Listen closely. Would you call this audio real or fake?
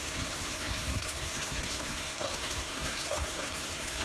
fake